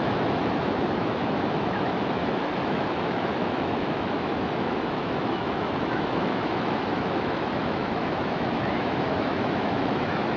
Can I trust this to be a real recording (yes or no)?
no